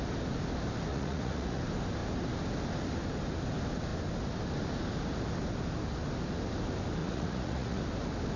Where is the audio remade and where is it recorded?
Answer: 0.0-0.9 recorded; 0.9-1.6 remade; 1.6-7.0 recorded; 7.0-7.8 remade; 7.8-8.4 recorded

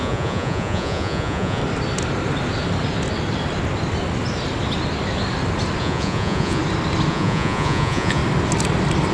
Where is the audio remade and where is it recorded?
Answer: 0.0-1.6 remade; 1.6-5.8 recorded; 5.8-6.6 remade; 6.6-7.1 recorded; 7.1-8.2 remade; 8.2-9.1 recorded

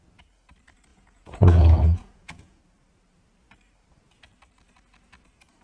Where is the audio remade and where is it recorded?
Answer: 0.0-0.9 recorded; 0.9-2.6 remade; 2.6-5.6 recorded

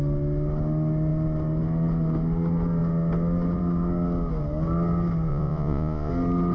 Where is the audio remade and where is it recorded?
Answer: 0.0-5.3 recorded; 5.3-6.1 remade; 6.1-6.5 recorded

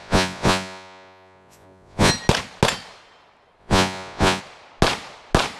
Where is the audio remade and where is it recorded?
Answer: 0.0-2.1 remade; 2.1-3.6 recorded; 3.6-4.4 remade; 4.4-5.6 recorded

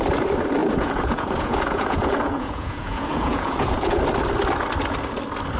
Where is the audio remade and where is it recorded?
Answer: 0.0-0.6 recorded; 0.6-4.0 remade; 4.0-5.6 recorded

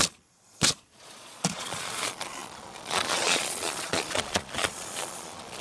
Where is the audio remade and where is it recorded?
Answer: 0.0-5.6 remade

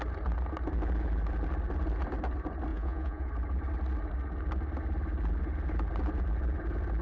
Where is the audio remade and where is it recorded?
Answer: 0.0-2.7 recorded; 2.7-3.3 remade; 3.3-7.0 recorded